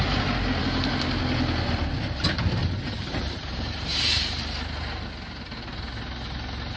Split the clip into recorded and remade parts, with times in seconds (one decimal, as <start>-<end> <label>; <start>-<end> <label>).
0.0-0.6 recorded; 0.6-1.2 remade; 1.2-2.6 recorded; 2.6-5.1 remade; 5.1-6.8 recorded